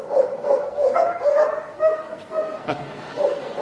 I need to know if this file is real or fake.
fake